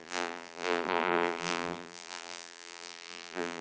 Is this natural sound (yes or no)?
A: no